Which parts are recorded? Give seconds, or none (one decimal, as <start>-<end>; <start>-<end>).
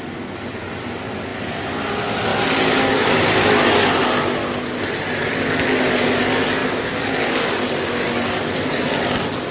0.0-9.5